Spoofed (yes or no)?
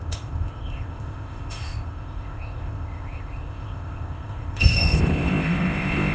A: yes